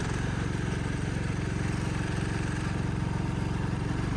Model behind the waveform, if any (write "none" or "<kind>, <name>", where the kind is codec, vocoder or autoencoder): vocoder, BigVGAN v2